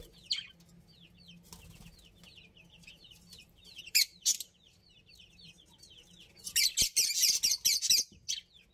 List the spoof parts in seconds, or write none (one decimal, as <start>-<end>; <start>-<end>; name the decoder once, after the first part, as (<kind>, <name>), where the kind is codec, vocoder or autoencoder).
3.0-5.9 (vocoder, BigVGAN v2)